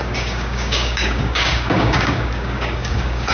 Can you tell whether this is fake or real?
fake